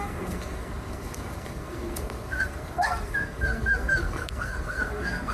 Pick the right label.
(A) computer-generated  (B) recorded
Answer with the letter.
A